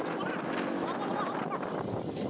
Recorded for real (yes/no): yes